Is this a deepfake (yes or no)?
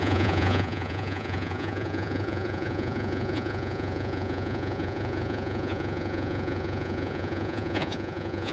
yes